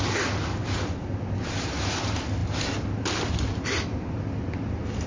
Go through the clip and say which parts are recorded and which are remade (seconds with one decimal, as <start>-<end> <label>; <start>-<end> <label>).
0.0-5.1 recorded